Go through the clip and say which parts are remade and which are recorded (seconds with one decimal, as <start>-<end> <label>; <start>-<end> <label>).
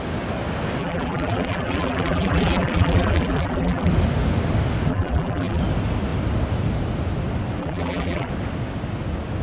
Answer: 0.0-0.8 recorded; 0.8-3.9 remade; 3.9-4.9 recorded; 4.9-5.6 remade; 5.6-7.6 recorded; 7.6-8.3 remade; 8.3-9.4 recorded